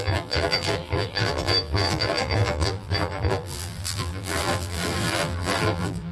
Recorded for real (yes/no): no